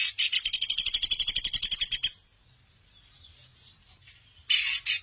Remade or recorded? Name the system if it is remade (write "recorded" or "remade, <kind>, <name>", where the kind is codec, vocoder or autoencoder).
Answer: recorded